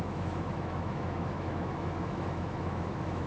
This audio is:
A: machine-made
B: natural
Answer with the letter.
A